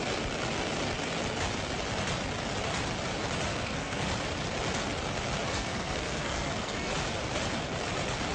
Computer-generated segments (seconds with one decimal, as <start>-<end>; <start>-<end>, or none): 3.5-4.1; 5.5-6.9